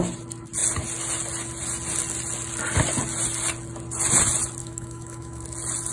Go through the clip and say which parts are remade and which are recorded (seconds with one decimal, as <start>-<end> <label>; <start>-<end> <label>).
0.0-4.6 recorded; 4.6-5.4 remade; 5.4-5.9 recorded